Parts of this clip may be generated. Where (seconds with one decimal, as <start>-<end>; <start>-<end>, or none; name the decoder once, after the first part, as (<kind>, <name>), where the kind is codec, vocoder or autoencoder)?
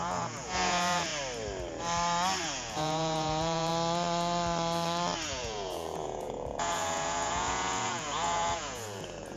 0.0-1.1 (vocoder, Vocos); 2.4-3.7; 5.3-9.4